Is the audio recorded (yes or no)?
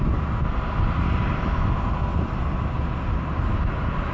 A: yes